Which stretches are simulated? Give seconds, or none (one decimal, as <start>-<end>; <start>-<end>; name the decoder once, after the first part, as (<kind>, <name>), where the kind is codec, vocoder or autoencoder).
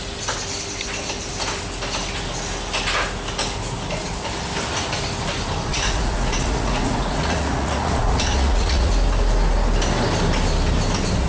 5.7-8.9 (vocoder, Vocos)